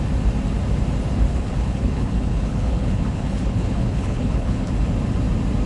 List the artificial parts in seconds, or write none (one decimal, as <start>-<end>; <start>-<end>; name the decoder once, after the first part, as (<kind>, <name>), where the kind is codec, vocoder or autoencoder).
1.3-4.7 (codec, HILCodec)